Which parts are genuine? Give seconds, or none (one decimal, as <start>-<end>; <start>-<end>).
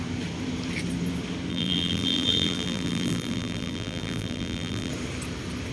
0.0-1.5; 4.9-5.7